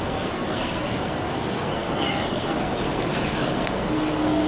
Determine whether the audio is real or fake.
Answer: fake